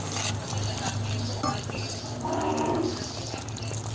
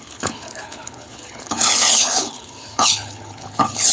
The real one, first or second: first